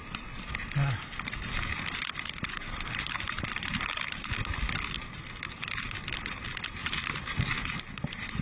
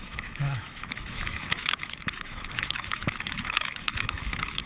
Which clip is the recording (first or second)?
first